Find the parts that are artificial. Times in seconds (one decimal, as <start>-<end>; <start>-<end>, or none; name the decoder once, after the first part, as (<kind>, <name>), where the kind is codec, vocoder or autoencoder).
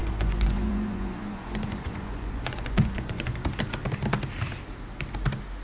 0.0-3.4 (vocoder, Vocos)